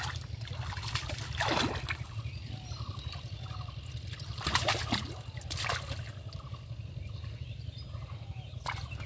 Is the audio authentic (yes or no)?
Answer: yes